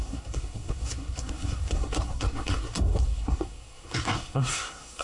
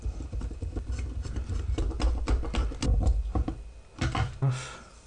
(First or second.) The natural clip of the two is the second